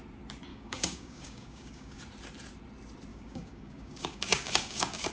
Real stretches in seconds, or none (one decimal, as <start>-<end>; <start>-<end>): 0.0-0.5; 2.0-3.1